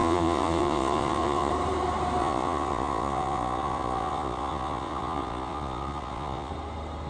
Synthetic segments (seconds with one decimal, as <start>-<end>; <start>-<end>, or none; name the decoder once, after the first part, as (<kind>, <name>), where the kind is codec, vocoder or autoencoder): 0.0-1.5 (vocoder, Vocos); 2.2-6.5